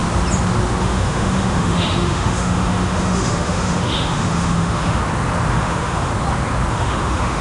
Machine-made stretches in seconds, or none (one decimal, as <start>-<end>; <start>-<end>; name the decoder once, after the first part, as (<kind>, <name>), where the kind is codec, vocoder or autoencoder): 0.8-5.0 (autoencoder, DAC-VAE); 5.5-6.1; 6.7-7.4